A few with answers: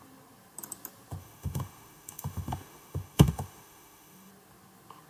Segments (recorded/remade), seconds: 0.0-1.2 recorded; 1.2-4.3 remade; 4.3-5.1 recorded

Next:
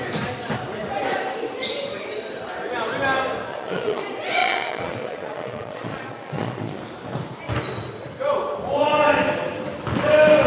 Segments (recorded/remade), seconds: 0.0-3.5 recorded; 3.5-4.0 remade; 4.0-4.4 recorded; 4.4-6.8 remade; 6.8-10.5 recorded

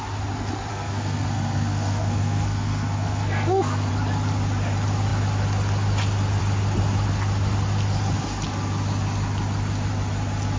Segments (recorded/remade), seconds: 0.0-0.7 recorded; 0.7-3.9 remade; 3.9-10.6 recorded

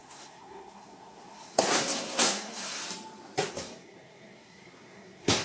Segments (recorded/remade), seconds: 0.0-2.8 remade; 2.8-3.5 recorded; 3.5-5.4 remade